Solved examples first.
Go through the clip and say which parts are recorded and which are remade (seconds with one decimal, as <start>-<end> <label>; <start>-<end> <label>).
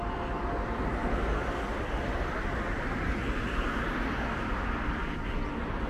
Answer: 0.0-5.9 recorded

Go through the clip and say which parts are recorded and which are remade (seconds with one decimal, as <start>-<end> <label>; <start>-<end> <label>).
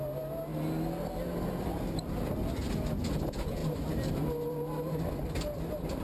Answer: 0.0-3.6 recorded; 3.6-5.0 remade; 5.0-6.0 recorded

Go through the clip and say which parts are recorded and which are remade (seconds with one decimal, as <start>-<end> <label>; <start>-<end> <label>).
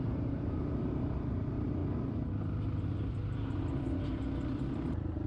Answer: 0.0-1.8 remade; 1.8-4.7 recorded; 4.7-5.3 remade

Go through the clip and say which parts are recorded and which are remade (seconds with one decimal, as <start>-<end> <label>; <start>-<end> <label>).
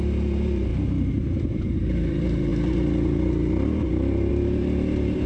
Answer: 0.0-2.5 remade; 2.5-4.3 recorded; 4.3-5.3 remade